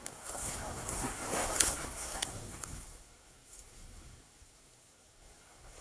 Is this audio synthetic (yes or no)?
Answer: yes